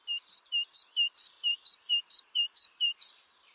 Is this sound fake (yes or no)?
yes